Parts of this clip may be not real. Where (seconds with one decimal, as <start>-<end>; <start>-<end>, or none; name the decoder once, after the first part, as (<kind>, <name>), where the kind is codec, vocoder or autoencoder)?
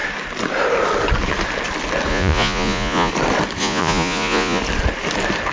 2.1-3.1 (vocoder, Vocos); 3.6-4.6